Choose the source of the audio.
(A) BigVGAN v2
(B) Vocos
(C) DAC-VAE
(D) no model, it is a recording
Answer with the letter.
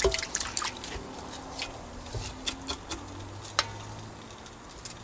D